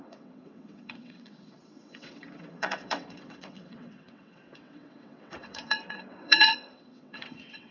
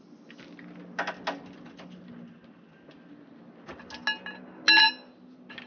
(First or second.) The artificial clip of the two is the first